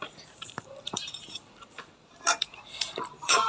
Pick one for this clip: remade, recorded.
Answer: remade